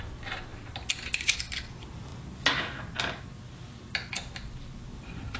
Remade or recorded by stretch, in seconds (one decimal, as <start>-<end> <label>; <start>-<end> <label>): 0.0-5.4 recorded

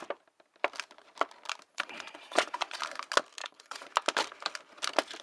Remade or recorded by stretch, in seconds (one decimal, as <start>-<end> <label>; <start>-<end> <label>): 0.0-1.7 recorded; 1.7-2.8 remade; 2.8-3.4 recorded; 3.4-3.9 remade; 3.9-5.2 recorded

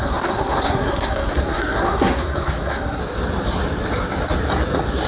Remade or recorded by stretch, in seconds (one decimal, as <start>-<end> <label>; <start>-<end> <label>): 0.0-3.0 remade; 3.0-5.1 recorded

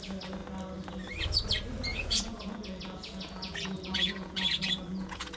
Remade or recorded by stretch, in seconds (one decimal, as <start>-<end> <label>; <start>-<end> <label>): 0.0-1.9 recorded; 1.9-5.4 remade

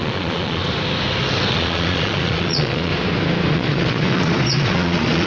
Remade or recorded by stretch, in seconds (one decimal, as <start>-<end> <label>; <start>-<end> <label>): 0.0-0.6 remade; 0.6-1.5 recorded; 1.5-2.9 remade; 2.9-3.5 recorded; 3.5-5.3 remade

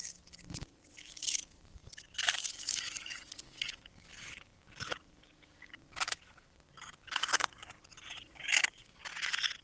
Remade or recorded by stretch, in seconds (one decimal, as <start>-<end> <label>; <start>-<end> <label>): 0.0-1.8 remade; 1.8-2.5 recorded; 2.5-7.8 remade; 7.8-8.3 recorded; 8.3-9.0 remade; 9.0-9.6 recorded

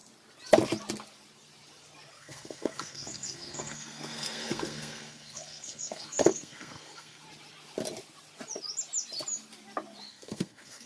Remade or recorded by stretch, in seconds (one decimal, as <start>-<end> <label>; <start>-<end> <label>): 0.0-2.1 recorded; 2.1-7.2 remade; 7.2-10.1 recorded; 10.1-10.9 remade